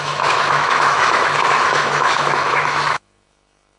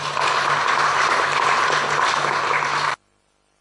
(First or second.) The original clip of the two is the second